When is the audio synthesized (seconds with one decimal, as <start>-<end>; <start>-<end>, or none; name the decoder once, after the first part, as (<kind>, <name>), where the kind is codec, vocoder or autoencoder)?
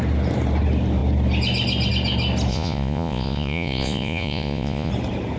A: 2.5-4.9 (vocoder, Vocos)